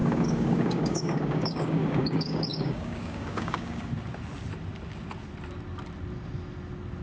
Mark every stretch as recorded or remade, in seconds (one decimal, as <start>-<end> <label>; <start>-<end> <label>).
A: 0.0-3.9 remade; 3.9-7.0 recorded